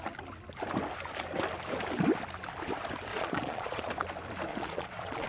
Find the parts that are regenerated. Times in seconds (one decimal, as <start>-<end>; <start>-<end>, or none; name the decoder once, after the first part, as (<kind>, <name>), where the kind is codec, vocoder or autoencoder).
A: 3.1-3.9 (vocoder, Vocos); 4.5-5.3